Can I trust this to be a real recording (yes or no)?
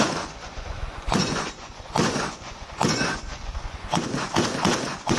no